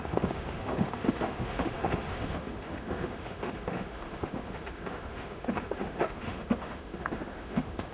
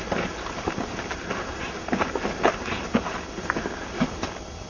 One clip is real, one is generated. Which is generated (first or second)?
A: first